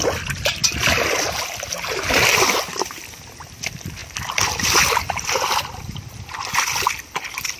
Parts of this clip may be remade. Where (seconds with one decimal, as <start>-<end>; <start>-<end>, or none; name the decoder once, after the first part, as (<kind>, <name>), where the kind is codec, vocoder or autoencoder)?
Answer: none